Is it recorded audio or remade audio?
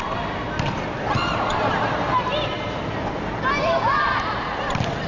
recorded